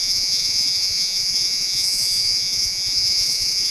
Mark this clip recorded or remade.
remade